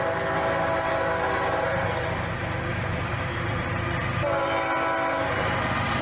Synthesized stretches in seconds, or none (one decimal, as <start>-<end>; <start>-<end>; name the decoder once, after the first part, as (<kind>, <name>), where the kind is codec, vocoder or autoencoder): 3.1-3.8 (vocoder, BigVGAN v2)